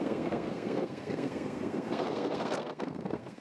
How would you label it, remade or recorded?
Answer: remade